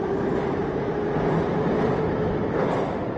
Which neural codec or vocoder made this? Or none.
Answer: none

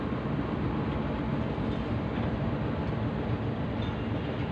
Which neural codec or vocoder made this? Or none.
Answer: none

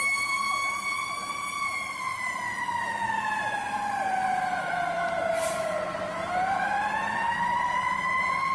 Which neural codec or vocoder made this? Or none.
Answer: vocoder, BigVGAN v2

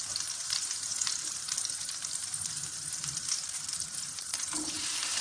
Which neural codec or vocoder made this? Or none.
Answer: vocoder, BigVGAN v2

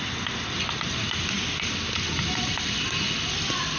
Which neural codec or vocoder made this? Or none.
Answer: none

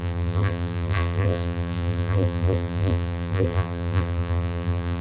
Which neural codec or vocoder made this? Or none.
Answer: vocoder, BigVGAN v2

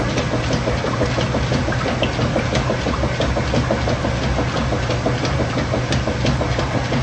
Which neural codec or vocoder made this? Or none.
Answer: none